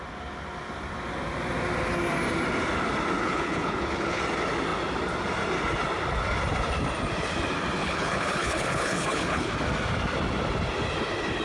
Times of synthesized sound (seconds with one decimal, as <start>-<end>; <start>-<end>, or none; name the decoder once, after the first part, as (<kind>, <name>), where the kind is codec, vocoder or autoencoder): 3.2-4.2 (codec, HILCodec); 7.8-9.5

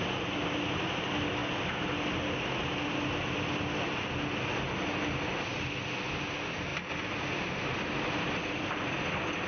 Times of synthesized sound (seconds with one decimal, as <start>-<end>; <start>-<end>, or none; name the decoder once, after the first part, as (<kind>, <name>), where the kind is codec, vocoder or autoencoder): none

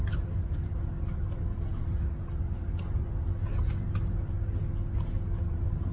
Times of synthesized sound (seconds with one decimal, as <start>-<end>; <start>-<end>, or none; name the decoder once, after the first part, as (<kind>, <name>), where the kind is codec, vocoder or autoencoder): none

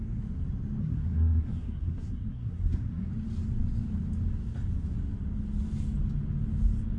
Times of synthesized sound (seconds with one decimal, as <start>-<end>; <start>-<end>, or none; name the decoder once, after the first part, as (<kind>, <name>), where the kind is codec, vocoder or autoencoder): 0.8-3.1 (codec, SNAC)

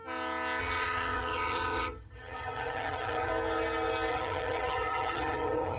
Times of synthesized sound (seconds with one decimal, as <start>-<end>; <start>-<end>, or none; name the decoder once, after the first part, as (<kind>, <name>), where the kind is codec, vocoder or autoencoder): 0.6-3.3 (vocoder, HiFi-GAN); 4.1-5.8